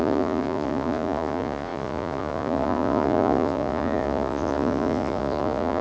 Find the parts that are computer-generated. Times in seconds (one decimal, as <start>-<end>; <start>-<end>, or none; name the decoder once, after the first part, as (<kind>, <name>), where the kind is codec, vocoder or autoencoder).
0.0-5.8 (vocoder, Vocos)